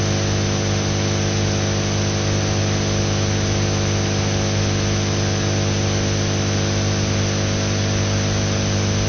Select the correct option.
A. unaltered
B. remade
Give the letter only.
A